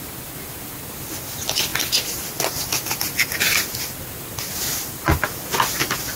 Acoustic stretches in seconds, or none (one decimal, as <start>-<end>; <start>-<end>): 0.0-6.2